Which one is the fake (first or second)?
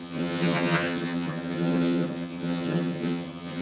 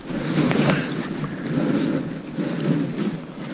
first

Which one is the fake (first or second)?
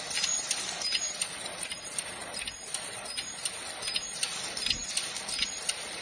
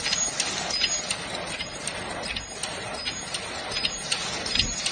first